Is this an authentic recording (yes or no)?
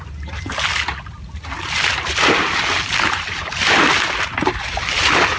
yes